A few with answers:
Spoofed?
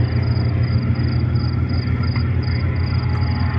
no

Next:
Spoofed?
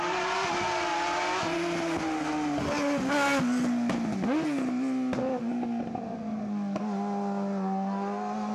no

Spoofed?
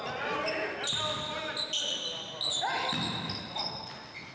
no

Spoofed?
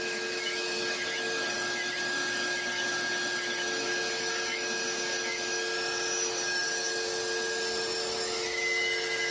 yes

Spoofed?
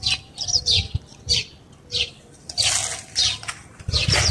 no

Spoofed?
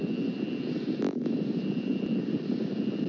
no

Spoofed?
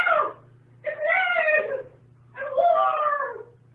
no